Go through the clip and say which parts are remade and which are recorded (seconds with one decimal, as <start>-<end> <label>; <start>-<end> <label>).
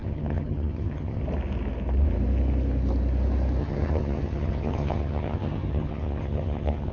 0.0-1.2 remade; 1.2-3.6 recorded; 3.6-6.9 remade